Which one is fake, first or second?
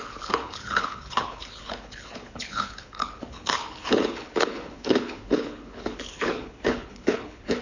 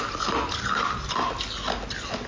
first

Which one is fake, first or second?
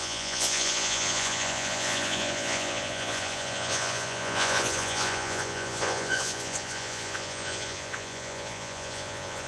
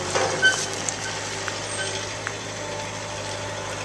first